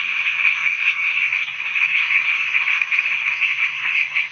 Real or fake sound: fake